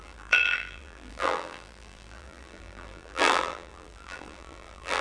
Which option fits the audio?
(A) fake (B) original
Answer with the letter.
A